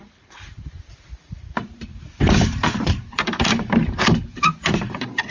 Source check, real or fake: fake